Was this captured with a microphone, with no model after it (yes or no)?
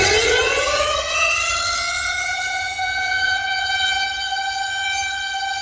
no